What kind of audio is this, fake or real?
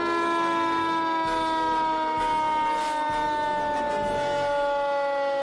real